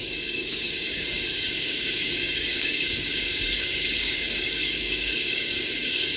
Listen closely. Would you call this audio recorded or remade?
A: remade